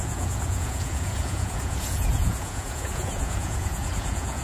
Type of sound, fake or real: fake